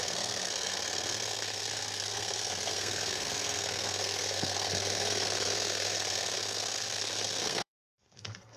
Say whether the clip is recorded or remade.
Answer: remade